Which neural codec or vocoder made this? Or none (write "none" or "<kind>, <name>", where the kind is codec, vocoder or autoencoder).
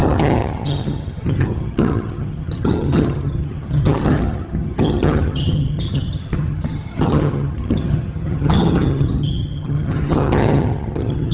vocoder, HiFi-GAN